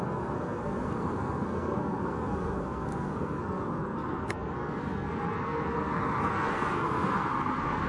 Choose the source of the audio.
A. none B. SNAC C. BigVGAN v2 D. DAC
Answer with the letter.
B